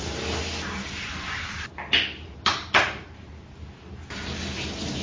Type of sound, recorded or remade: recorded